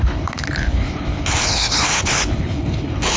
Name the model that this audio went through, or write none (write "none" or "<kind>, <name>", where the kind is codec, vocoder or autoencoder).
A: codec, HILCodec